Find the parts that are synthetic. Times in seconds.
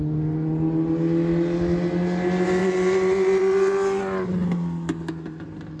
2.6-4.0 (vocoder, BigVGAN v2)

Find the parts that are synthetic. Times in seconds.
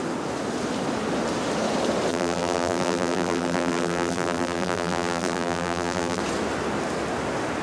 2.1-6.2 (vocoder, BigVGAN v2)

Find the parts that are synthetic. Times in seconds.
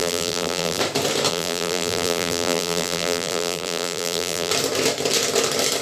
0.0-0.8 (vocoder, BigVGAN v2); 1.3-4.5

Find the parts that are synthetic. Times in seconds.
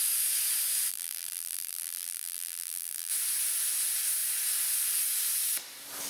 0.9-3.1 (vocoder, BigVGAN v2)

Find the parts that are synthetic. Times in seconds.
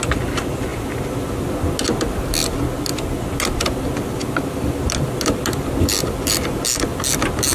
none